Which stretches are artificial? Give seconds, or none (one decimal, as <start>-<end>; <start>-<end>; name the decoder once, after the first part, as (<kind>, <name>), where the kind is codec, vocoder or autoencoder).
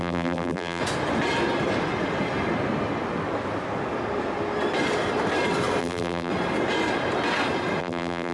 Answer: 0.0-0.8 (vocoder, BigVGAN v2); 5.8-6.3; 7.8-8.3